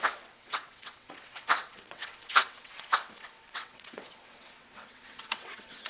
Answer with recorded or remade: remade